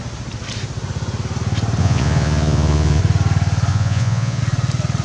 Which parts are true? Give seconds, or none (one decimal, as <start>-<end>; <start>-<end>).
0.0-1.8; 3.0-3.7; 4.4-5.0